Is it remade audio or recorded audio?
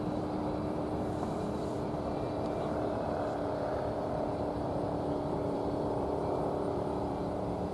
remade